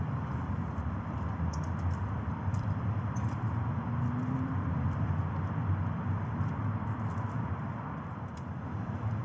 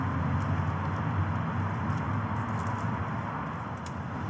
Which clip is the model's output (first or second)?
first